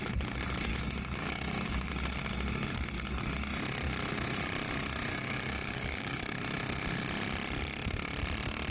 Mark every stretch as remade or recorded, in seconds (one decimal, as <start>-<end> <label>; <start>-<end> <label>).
0.0-0.7 recorded; 0.7-1.9 remade; 1.9-5.1 recorded; 5.1-6.3 remade; 6.3-8.7 recorded